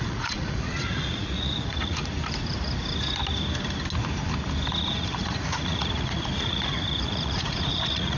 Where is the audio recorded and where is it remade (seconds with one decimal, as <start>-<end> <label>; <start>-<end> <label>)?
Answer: 0.0-2.0 remade; 2.0-4.7 recorded; 4.7-8.2 remade